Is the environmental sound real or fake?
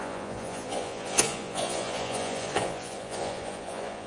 fake